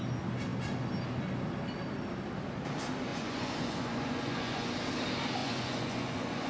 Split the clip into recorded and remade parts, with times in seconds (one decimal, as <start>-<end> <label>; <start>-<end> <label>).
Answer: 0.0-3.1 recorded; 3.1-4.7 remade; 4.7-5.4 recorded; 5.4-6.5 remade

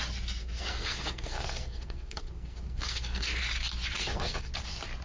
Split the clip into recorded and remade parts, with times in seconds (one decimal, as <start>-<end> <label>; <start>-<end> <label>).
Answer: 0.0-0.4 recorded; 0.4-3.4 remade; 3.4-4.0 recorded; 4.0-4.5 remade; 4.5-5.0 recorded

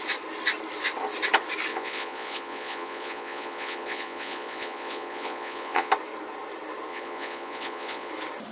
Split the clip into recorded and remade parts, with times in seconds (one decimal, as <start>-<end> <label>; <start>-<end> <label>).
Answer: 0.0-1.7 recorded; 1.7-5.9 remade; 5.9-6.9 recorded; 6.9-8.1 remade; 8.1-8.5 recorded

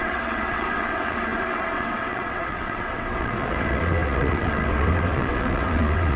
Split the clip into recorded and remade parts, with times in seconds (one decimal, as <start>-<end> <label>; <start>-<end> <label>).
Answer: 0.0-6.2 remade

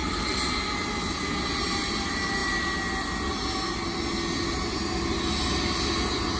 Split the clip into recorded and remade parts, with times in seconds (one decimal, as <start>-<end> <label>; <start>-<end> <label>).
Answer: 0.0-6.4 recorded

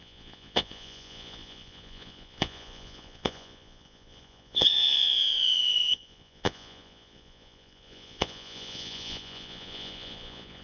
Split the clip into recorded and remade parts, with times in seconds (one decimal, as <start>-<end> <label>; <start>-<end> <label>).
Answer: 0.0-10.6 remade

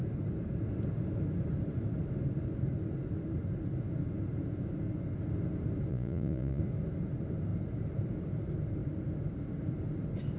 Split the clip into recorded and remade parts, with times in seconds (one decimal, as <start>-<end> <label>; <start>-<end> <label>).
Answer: 0.0-5.9 recorded; 5.9-6.6 remade; 6.6-10.4 recorded